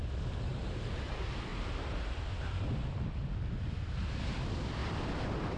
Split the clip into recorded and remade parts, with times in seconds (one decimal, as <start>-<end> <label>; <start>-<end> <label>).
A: 0.0-0.5 recorded; 0.5-1.1 remade; 1.1-1.5 recorded; 1.5-2.7 remade; 2.7-4.8 recorded; 4.8-5.6 remade